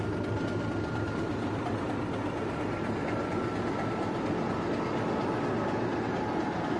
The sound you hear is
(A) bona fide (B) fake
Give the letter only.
A